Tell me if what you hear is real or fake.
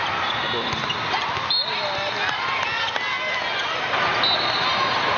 real